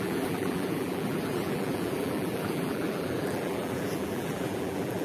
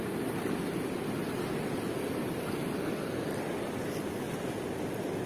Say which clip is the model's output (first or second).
first